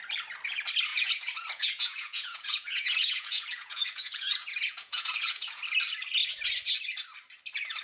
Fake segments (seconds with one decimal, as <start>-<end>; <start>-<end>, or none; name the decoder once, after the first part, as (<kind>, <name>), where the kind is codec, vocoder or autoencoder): 0.9-5.6 (vocoder, Vocos)